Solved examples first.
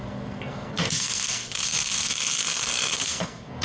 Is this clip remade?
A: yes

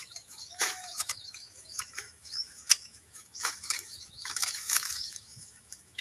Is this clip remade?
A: yes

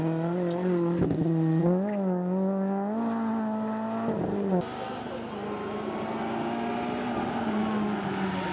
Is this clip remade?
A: no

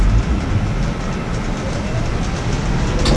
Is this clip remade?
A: no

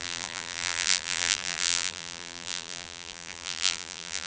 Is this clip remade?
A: yes